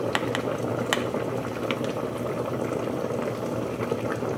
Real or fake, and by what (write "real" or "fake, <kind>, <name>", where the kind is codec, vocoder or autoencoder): real